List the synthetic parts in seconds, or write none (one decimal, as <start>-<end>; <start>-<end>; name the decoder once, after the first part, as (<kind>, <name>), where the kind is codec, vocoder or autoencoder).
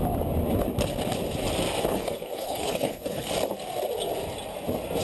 1.9-3.3 (codec, HILCodec)